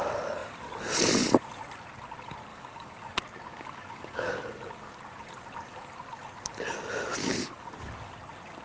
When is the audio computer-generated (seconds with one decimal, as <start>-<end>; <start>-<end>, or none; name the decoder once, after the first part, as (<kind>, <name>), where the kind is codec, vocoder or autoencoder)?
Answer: 2.5-3.1 (codec, DAC); 3.5-4.5; 7.2-7.7